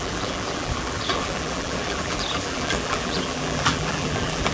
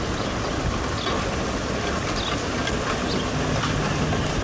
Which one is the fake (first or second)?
first